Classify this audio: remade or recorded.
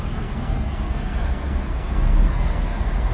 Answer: remade